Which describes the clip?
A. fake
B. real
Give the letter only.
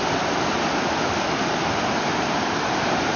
B